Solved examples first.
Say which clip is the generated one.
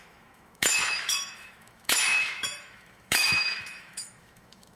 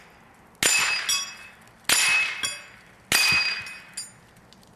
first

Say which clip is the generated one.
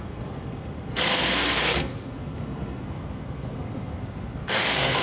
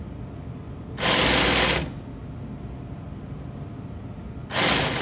first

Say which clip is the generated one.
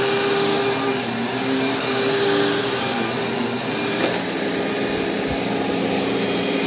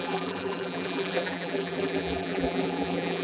second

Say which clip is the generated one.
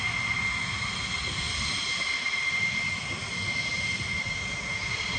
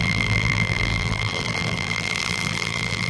second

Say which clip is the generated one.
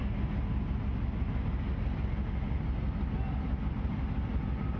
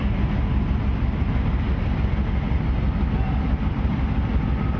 second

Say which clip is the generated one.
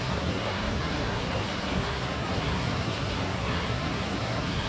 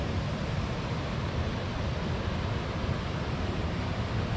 first